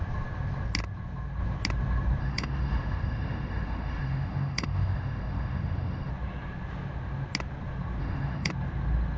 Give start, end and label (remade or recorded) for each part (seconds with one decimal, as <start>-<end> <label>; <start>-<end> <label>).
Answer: 0.0-2.2 recorded; 2.2-6.1 remade; 6.1-8.0 recorded; 8.0-8.5 remade; 8.5-9.2 recorded